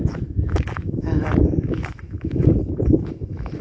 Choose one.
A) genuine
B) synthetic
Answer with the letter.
B